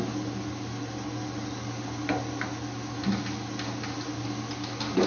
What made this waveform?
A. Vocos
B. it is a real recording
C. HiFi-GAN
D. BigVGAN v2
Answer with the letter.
B